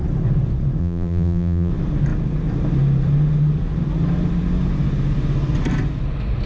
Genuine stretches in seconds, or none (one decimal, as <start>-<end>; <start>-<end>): 0.0-0.8; 1.7-6.5